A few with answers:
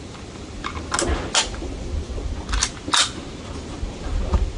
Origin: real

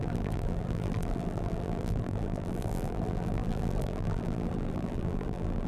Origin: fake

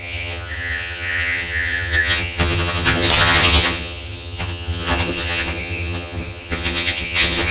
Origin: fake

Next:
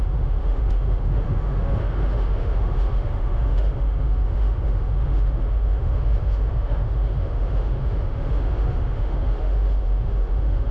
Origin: fake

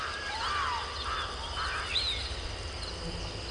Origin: real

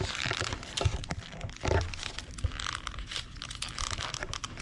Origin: fake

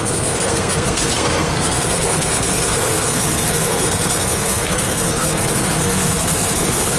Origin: fake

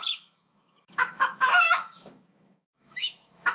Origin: fake